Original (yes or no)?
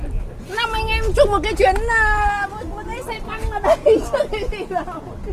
yes